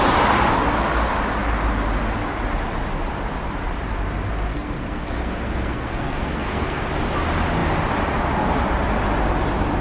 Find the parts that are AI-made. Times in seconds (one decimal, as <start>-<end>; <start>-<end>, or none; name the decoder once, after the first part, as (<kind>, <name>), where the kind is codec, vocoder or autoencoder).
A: 4.5-6.9 (codec, SNAC)